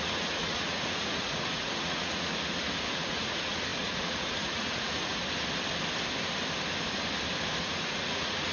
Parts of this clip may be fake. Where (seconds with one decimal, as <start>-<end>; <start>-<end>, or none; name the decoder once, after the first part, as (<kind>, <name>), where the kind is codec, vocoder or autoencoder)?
0.0-2.3 (vocoder, Vocos); 2.9-5.1; 7.6-8.5